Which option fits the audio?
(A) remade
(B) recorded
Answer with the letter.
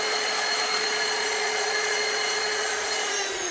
A